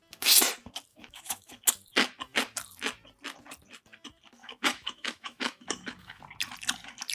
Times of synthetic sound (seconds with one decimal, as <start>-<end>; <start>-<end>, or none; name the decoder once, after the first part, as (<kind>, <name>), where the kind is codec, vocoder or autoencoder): 0.9-1.5 (autoencoder, DAC-VAE); 4.4-6.2